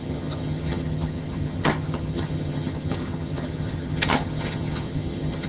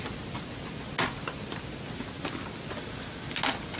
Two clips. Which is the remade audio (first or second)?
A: first